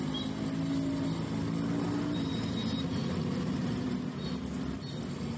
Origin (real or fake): real